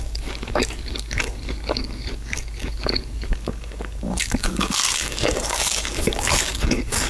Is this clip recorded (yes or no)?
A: no